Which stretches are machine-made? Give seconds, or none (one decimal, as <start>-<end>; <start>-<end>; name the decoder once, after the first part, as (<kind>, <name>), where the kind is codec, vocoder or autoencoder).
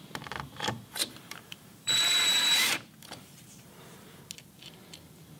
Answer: 1.0-4.2 (vocoder, BigVGAN v2)